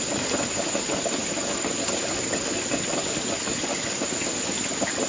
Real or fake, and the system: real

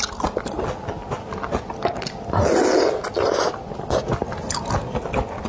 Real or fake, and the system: real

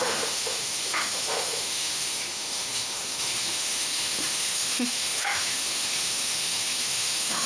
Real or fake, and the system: fake, autoencoder, DAC-VAE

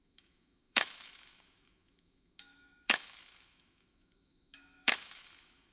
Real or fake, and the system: fake, autoencoder, DAC-VAE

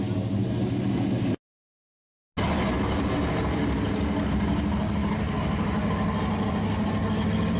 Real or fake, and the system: real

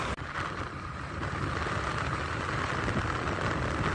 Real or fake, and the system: real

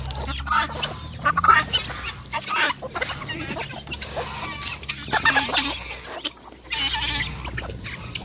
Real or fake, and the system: real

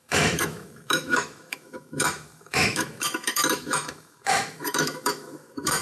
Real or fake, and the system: fake, autoencoder, DAC-VAE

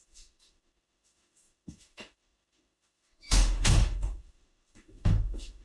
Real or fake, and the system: fake, autoencoder, DAC-VAE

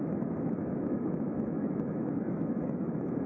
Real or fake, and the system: fake, autoencoder, DAC-VAE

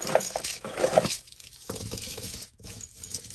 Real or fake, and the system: fake, autoencoder, DAC-VAE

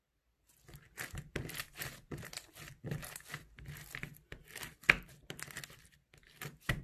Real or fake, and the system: real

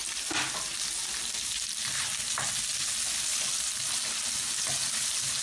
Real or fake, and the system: real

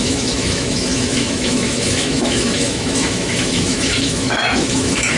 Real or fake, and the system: fake, autoencoder, DAC-VAE